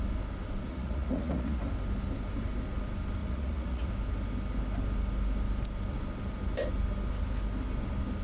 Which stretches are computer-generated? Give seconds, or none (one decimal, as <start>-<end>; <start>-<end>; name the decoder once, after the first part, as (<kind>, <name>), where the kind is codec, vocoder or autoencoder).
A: 0.7-1.6 (vocoder, Vocos); 3.2-3.9